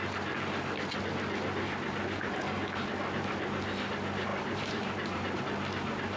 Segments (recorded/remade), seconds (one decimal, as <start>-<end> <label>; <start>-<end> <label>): 0.0-4.3 recorded; 4.3-5.4 remade; 5.4-6.2 recorded